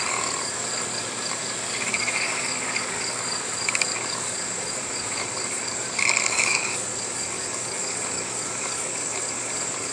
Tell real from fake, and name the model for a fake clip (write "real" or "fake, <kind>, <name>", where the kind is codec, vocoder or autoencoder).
fake, codec, DAC